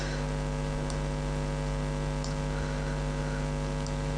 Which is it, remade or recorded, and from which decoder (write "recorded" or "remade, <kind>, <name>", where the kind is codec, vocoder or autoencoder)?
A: recorded